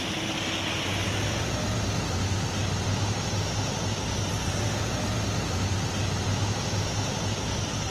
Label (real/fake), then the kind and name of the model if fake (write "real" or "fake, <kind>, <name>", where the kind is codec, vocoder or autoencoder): real